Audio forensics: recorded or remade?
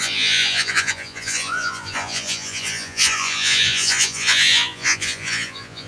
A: remade